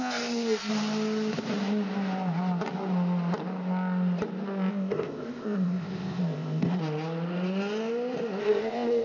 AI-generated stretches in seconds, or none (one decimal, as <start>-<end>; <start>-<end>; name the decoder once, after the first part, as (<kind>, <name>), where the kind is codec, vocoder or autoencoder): 0.0-0.7 (codec, ZipCodec); 4.7-6.8; 8.4-9.0